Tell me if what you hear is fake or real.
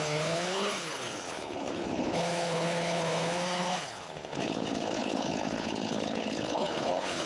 fake